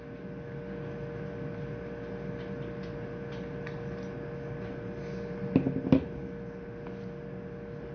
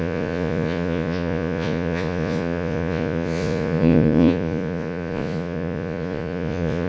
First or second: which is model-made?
second